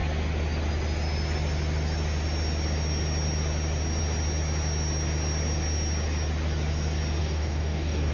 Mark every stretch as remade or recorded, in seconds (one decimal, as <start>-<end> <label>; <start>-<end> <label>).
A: 0.0-7.2 recorded; 7.2-8.1 remade